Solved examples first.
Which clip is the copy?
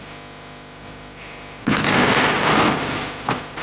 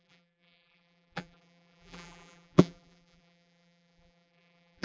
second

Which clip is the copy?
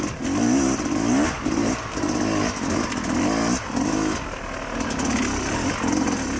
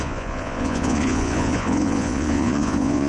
second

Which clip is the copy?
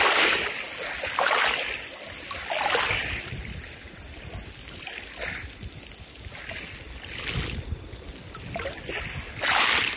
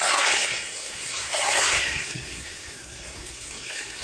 second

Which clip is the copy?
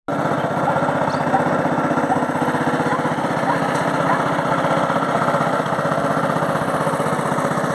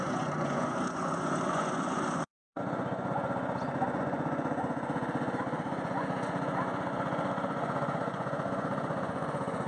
second